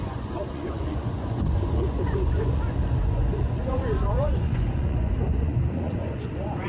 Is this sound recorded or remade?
remade